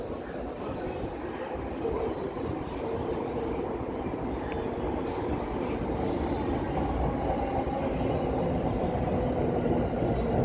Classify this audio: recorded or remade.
recorded